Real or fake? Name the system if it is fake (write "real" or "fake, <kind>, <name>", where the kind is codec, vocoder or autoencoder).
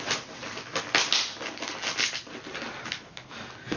real